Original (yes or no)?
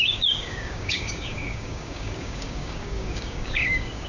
no